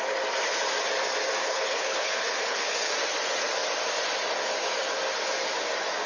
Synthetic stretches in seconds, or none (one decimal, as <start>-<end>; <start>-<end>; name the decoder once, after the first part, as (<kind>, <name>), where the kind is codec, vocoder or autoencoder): 1.4-2.9 (codec, HILCodec)